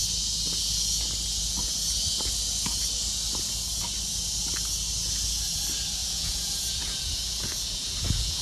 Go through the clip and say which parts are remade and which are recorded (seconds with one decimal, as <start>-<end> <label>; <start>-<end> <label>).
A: 0.0-6.0 recorded; 6.0-8.4 remade